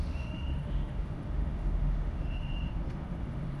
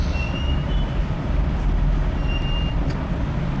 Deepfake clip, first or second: first